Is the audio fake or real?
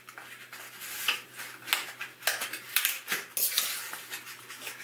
real